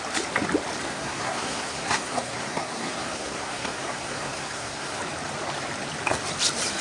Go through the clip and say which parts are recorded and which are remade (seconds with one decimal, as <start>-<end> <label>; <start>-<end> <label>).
0.0-0.9 recorded; 0.9-5.0 remade; 5.0-6.8 recorded